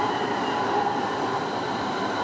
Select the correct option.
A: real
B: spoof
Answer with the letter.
B